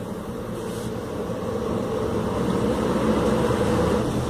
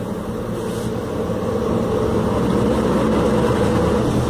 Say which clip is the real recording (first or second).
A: second